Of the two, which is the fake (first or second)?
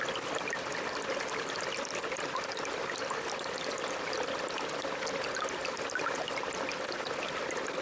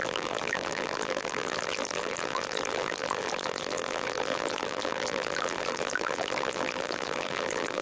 second